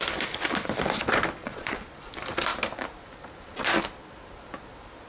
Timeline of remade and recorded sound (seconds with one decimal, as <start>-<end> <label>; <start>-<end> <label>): 0.0-1.4 recorded; 1.4-2.1 remade; 2.1-5.1 recorded